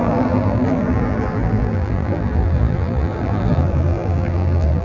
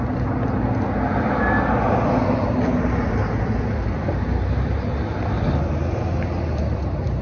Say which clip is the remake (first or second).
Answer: first